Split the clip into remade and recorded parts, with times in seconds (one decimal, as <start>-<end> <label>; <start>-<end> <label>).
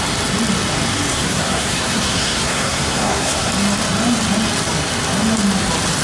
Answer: 0.0-1.1 recorded; 1.1-3.5 remade; 3.5-6.0 recorded